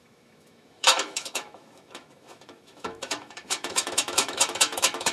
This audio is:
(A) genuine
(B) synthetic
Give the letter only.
B